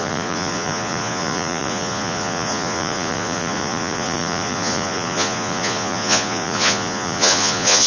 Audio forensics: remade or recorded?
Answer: remade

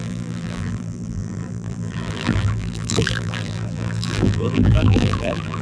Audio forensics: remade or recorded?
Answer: remade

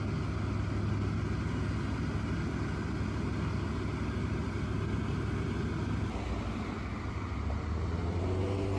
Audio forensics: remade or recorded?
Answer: recorded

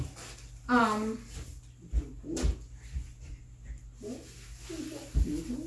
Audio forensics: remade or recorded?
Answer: recorded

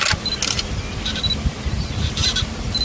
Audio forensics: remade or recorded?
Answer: recorded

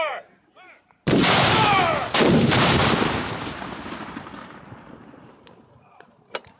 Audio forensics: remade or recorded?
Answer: remade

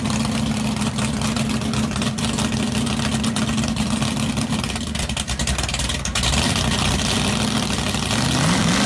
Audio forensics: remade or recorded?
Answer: recorded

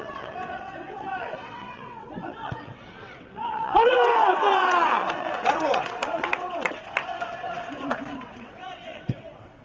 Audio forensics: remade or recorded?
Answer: remade